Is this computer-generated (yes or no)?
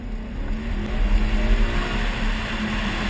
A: no